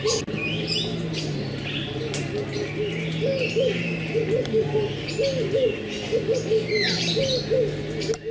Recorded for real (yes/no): yes